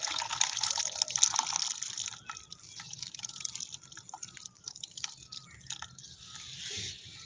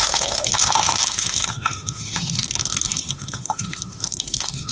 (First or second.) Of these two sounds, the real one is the first